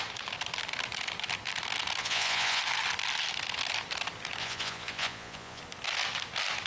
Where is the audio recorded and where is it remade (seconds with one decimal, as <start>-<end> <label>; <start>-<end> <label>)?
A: 0.0-2.0 recorded; 2.0-2.6 remade; 2.6-4.4 recorded; 4.4-5.6 remade; 5.6-6.7 recorded